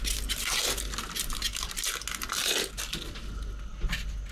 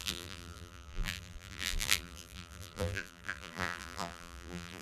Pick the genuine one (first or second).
first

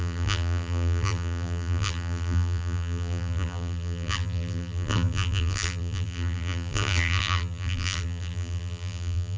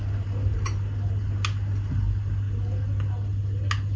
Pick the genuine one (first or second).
second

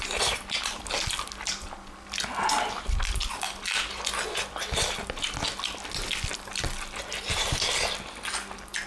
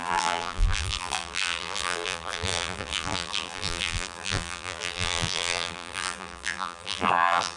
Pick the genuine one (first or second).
first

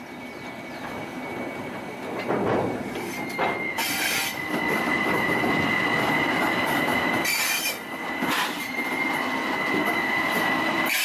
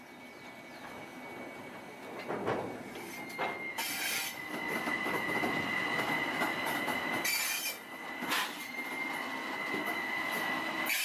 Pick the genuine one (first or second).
second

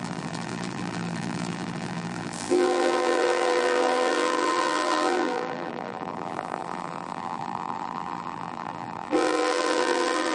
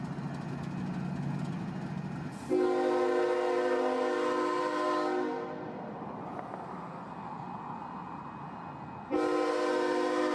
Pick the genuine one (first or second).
second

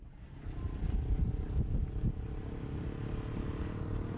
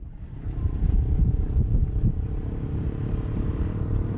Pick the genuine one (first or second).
first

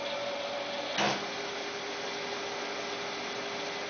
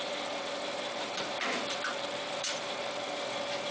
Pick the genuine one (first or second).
first